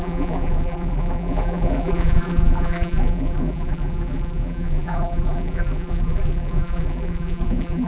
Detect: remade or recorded remade